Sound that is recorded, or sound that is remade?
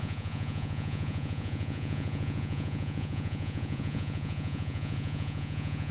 remade